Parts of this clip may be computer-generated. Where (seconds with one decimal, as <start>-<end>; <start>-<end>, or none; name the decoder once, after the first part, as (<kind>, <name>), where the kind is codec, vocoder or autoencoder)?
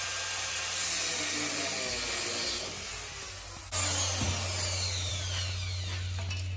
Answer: none